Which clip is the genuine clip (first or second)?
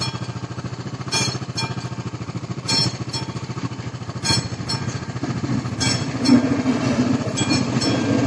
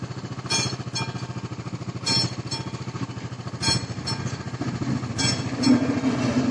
second